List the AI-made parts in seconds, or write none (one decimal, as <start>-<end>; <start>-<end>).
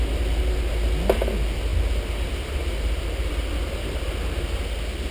none